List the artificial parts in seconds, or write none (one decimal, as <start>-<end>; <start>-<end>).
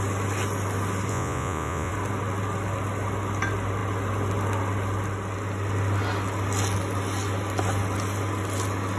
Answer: 1.1-1.9